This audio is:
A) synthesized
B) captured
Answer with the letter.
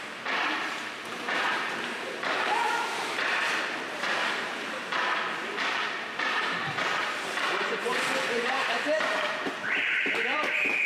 A